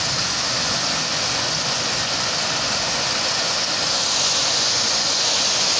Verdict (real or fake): fake